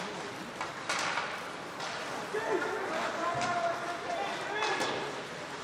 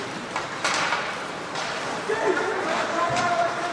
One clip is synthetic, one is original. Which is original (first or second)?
first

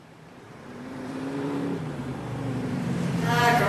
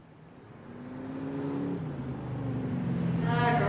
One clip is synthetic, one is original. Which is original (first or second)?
second